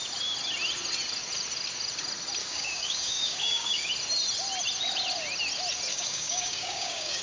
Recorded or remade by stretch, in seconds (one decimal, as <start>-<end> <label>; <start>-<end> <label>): 0.0-2.4 recorded; 2.4-3.9 remade; 3.9-5.9 recorded; 5.9-7.2 remade

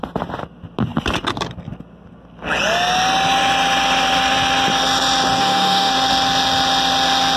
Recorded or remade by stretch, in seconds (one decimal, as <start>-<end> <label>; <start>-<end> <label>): 0.0-5.4 recorded; 5.4-5.9 remade; 5.9-7.4 recorded

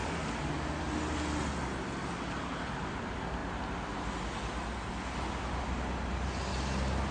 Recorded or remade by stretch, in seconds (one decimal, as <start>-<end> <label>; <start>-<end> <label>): 0.0-7.1 recorded

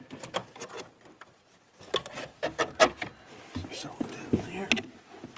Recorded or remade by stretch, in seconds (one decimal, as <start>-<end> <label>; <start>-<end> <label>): 0.0-0.4 recorded; 0.4-1.5 remade; 1.5-5.4 recorded

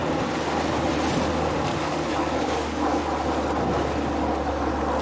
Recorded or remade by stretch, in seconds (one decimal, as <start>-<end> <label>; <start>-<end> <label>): 0.0-1.7 recorded; 1.7-3.0 remade; 3.0-5.0 recorded

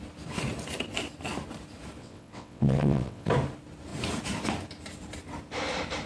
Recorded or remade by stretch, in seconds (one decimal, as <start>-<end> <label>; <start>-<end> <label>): 0.0-2.0 recorded; 2.0-3.3 remade; 3.3-6.1 recorded

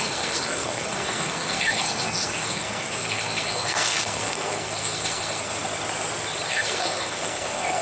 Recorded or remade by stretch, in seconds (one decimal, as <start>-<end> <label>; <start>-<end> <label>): 0.0-5.6 remade; 5.6-6.5 recorded; 6.5-7.8 remade

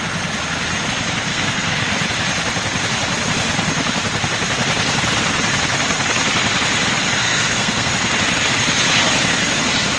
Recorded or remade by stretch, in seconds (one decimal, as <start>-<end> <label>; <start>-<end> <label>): 0.0-1.3 recorded; 1.3-1.8 remade; 1.8-7.2 recorded; 7.2-7.9 remade; 7.9-10.0 recorded